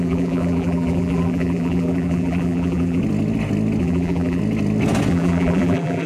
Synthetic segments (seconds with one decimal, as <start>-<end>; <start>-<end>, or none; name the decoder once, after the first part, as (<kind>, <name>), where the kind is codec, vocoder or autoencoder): 0.0-3.0 (vocoder, BigVGAN v2); 3.8-4.4; 5.1-6.1